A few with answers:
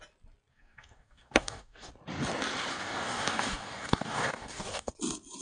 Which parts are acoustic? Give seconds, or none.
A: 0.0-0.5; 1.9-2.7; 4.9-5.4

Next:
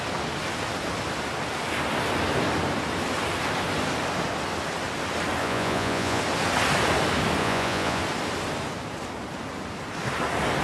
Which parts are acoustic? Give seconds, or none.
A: 0.0-5.4; 6.2-7.4; 8.0-10.6

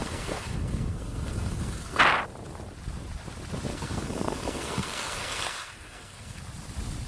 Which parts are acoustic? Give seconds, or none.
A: 2.0-3.7; 6.4-7.1